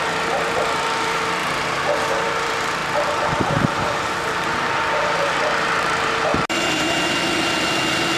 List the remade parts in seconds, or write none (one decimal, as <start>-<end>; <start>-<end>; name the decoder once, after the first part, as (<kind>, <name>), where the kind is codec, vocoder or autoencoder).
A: 0.0-1.4 (vocoder, BigVGAN v2); 2.1-6.3